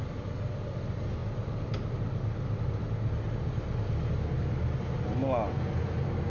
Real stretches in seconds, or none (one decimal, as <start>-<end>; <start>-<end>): 0.0-6.3